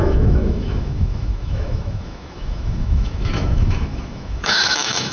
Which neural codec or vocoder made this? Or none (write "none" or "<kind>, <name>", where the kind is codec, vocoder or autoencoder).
autoencoder, DAC-VAE